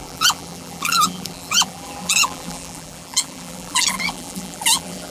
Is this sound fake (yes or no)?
yes